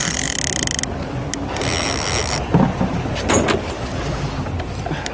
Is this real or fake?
real